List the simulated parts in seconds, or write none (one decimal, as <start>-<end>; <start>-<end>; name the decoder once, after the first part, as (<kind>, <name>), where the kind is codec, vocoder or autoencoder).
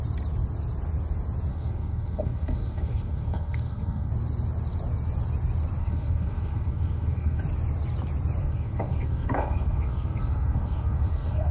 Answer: 1.5-4.1 (codec, SNAC); 5.8-7.4; 8.4-11.5